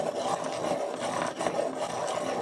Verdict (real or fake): real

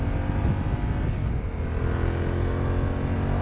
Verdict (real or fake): real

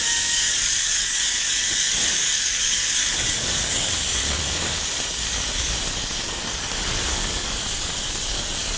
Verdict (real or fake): fake